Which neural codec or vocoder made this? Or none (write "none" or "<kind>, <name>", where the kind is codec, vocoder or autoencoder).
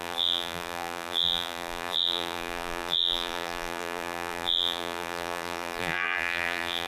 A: vocoder, BigVGAN v2